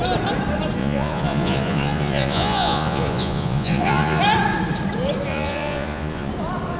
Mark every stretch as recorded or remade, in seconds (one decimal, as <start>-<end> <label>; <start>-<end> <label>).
0.0-0.8 recorded; 0.8-4.2 remade; 4.2-5.3 recorded; 5.3-6.3 remade; 6.3-6.8 recorded